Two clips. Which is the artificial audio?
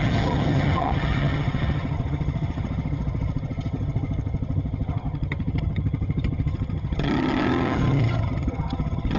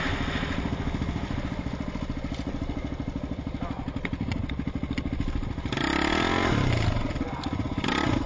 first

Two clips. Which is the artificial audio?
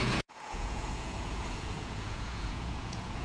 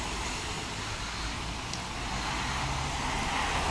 first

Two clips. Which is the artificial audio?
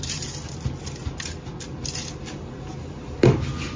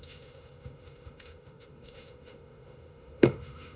second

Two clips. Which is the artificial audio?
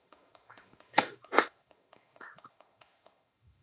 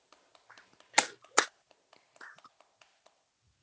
first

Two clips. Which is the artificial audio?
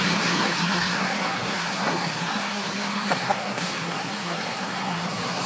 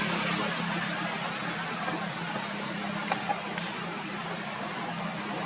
first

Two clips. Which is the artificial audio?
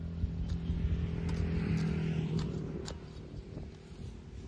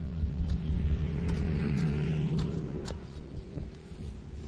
second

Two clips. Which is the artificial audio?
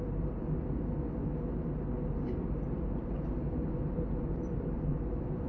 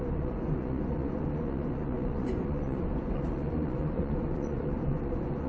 second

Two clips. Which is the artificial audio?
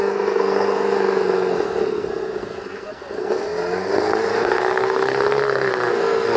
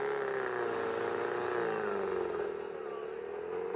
first